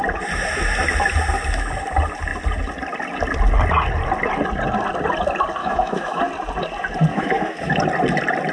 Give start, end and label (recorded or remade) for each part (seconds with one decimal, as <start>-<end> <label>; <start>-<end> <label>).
0.0-5.6 recorded; 5.6-6.2 remade; 6.2-7.1 recorded; 7.1-7.7 remade; 7.7-8.5 recorded